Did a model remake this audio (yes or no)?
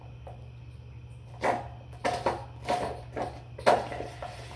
no